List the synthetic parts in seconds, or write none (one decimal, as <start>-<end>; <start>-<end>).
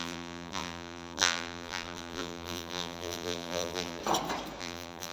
0.0-4.0; 4.6-5.1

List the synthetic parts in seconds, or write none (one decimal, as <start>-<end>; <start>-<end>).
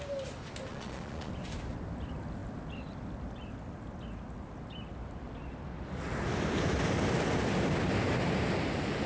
0.7-1.3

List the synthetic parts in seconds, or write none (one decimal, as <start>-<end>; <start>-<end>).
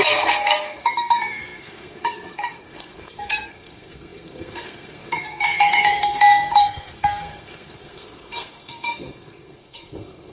0.0-10.3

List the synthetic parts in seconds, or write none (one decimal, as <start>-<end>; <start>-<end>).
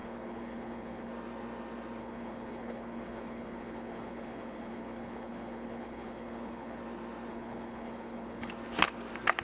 0.0-1.1; 2.0-6.8; 7.3-8.5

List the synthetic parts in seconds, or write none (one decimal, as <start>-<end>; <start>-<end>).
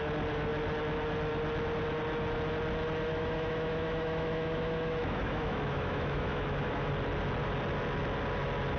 3.1-6.9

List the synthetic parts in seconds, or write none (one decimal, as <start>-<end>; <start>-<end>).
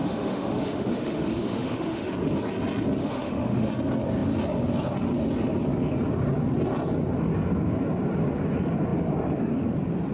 0.0-2.1; 3.0-3.7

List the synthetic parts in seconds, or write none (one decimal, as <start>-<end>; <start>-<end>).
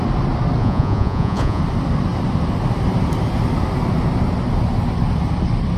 0.6-1.6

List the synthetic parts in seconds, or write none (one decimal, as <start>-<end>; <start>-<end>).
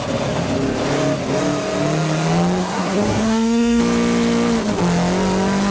2.6-3.8